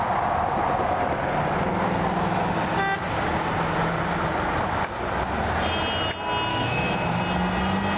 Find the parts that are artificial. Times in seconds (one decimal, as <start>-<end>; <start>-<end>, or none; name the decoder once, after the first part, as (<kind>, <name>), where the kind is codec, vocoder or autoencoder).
6.5-7.2 (autoencoder, DAC-VAE)